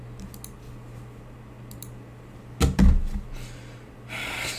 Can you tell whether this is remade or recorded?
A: recorded